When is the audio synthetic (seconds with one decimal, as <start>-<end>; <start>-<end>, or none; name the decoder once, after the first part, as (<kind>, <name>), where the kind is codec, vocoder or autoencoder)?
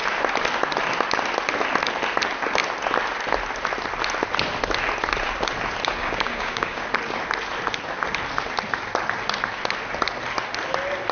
6.0-6.8 (codec, DAC)